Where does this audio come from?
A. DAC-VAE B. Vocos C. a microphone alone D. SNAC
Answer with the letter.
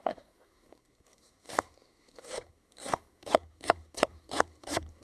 D